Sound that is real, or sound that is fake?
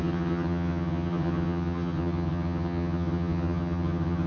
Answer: fake